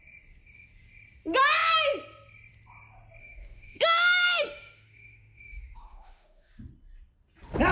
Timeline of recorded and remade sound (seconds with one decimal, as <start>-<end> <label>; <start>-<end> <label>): 0.0-3.2 recorded; 3.2-6.5 remade; 6.5-7.7 recorded